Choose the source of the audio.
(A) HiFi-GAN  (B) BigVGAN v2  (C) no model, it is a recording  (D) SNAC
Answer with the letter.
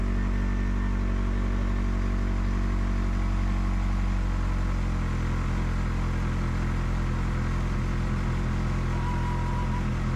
C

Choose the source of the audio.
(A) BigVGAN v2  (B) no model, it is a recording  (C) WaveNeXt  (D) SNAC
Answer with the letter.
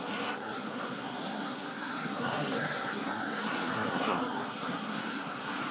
D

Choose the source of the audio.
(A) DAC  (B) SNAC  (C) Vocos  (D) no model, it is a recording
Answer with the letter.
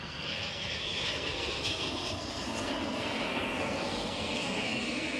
B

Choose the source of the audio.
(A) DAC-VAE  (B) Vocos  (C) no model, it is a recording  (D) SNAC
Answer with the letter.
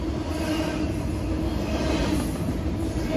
C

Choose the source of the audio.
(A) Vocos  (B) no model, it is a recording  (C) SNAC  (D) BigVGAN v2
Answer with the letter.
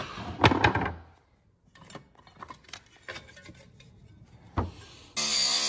B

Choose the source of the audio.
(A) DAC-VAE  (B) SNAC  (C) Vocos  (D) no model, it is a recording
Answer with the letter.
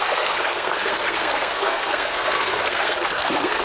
B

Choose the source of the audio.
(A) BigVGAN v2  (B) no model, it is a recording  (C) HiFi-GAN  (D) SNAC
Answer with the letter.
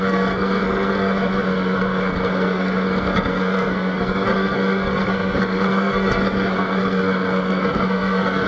D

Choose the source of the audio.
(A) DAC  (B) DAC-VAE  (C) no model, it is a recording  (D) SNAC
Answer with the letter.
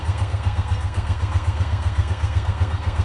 D